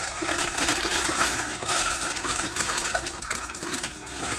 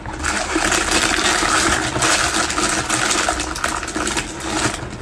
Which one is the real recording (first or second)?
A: second